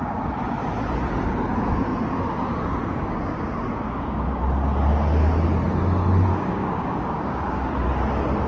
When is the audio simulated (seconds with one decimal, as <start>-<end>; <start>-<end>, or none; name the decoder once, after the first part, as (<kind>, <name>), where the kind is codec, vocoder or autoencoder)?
2.9-4.4 (codec, DAC); 6.3-7.7